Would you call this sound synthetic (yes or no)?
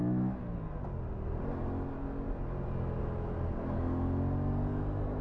no